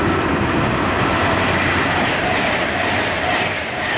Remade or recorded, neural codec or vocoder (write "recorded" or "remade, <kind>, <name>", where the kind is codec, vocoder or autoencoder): recorded